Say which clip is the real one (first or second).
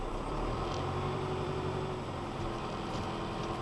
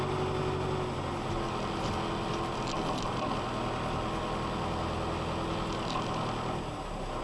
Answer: second